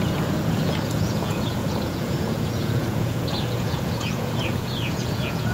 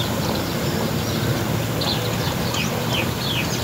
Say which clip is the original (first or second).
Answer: second